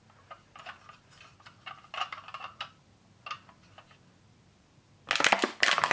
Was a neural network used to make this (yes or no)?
no